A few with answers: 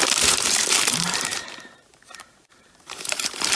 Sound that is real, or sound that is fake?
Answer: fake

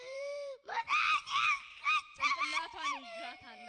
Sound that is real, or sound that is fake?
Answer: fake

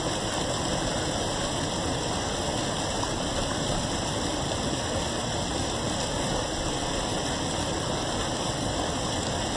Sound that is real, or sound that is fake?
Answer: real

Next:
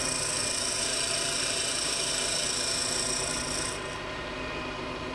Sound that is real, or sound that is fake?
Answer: fake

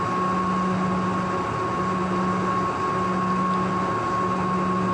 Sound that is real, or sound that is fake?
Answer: real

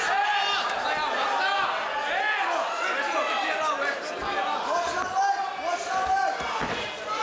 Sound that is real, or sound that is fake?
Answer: real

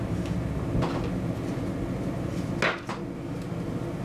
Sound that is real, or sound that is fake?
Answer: real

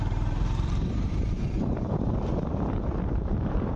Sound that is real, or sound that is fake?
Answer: fake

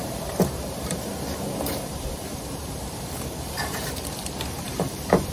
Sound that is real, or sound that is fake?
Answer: fake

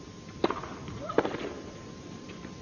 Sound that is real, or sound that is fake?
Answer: real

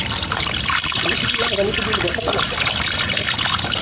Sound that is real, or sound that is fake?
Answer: real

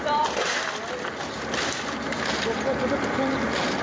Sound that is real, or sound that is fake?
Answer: real